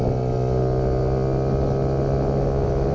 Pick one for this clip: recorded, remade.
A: recorded